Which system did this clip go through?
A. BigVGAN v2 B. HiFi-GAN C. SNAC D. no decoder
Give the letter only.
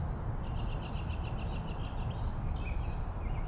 D